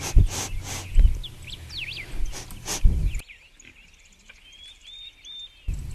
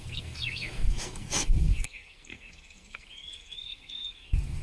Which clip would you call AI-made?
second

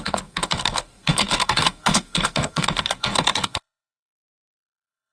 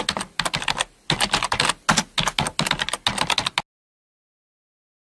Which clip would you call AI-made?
first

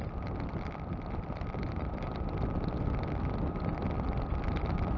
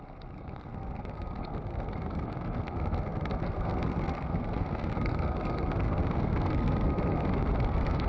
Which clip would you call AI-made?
second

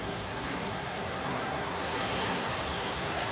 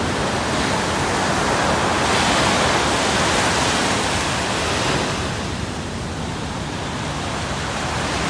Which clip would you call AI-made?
first